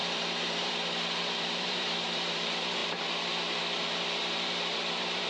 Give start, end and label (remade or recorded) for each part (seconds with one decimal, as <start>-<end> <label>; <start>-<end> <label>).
0.0-5.3 remade